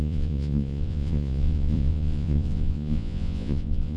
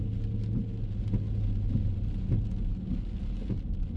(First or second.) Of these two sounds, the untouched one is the second